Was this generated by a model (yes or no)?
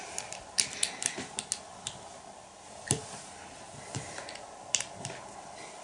no